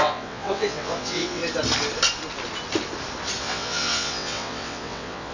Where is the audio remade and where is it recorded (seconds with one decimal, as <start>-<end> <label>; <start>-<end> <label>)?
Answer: 0.0-1.4 remade; 1.4-3.4 recorded; 3.4-5.3 remade